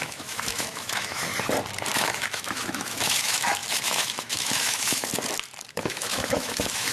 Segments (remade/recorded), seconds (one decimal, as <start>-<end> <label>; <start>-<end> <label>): 0.0-1.3 remade; 1.3-1.9 recorded; 1.9-5.1 remade; 5.1-5.7 recorded; 5.7-6.9 remade

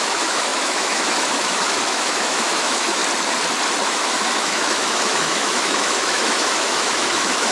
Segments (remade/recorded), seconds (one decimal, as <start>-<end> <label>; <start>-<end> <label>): 0.0-3.0 remade; 3.0-3.9 recorded; 3.9-7.5 remade

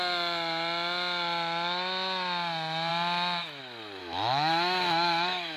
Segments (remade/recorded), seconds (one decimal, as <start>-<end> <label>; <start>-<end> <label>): 0.0-4.0 recorded; 4.0-5.6 remade

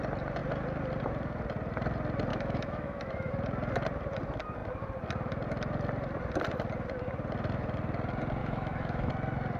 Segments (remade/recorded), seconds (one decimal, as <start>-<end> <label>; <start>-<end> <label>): 0.0-2.3 recorded; 2.3-3.3 remade; 3.3-8.4 recorded; 8.4-9.1 remade; 9.1-9.6 recorded

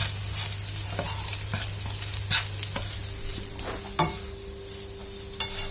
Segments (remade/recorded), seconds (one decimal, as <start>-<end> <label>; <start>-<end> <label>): 0.0-5.7 recorded

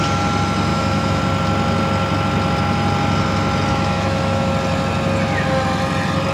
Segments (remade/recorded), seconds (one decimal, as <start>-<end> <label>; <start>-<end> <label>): 0.0-0.7 recorded; 0.7-1.2 remade; 1.2-3.7 recorded; 3.7-4.5 remade; 4.5-6.3 recorded

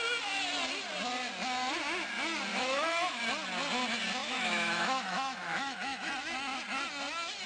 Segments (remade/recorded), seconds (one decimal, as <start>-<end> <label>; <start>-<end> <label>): 0.0-2.5 recorded; 2.5-3.2 remade; 3.2-4.2 recorded; 4.2-6.1 remade; 6.1-7.5 recorded